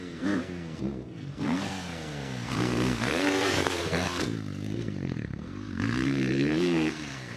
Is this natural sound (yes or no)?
no